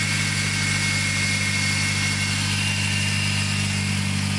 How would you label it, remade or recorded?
recorded